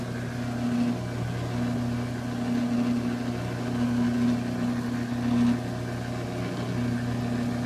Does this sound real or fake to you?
real